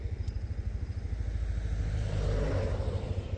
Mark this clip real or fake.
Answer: fake